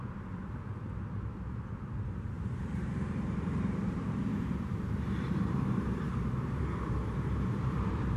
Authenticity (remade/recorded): remade